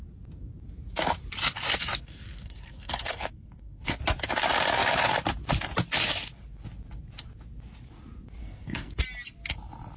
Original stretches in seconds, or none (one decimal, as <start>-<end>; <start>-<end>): 0.0-1.7; 4.0-8.4; 9.0-10.0